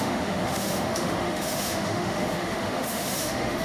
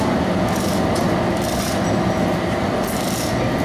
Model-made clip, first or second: first